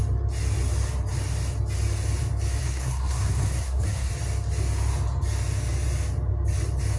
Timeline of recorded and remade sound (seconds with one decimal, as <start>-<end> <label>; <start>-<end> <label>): 0.0-2.6 recorded; 2.6-4.1 remade; 4.1-7.0 recorded